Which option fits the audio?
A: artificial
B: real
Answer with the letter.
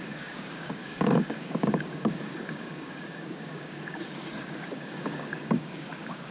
A